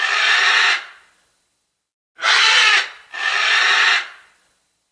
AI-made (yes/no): no